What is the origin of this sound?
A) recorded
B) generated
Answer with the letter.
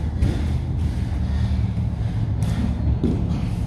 A